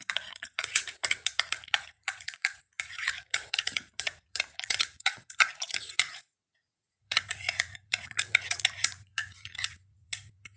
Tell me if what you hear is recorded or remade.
remade